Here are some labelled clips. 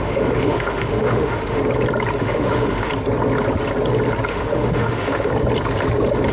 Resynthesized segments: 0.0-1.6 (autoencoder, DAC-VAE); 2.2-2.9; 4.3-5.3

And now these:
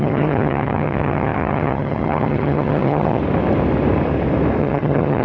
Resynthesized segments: 0.0-3.2 (vocoder, HiFi-GAN); 4.6-5.2

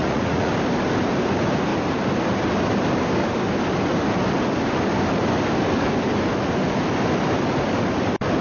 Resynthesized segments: 0.0-0.5 (vocoder, Vocos)